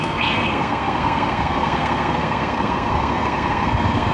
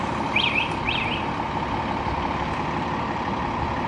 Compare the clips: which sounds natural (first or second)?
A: second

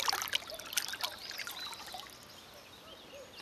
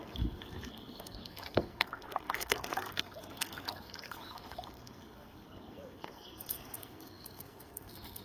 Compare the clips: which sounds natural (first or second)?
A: first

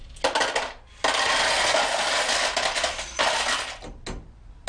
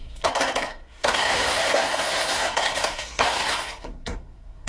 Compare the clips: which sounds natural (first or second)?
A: first